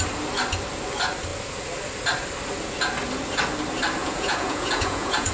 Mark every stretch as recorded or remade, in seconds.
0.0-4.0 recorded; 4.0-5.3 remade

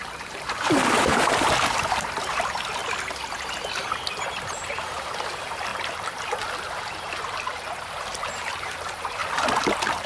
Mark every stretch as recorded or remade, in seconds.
0.0-2.8 remade; 2.8-4.4 recorded; 4.4-9.2 remade; 9.2-10.1 recorded

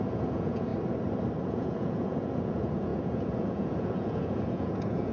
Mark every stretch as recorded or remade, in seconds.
0.0-0.7 remade; 0.7-1.4 recorded; 1.4-5.1 remade

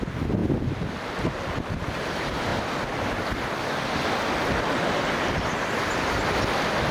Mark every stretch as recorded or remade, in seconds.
0.0-6.9 recorded

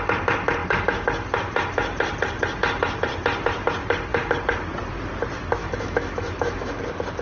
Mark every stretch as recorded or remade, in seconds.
0.0-5.6 recorded; 5.6-6.8 remade; 6.8-7.2 recorded

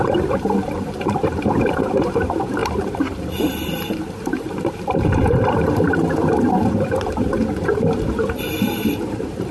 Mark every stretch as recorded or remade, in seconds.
0.0-9.5 remade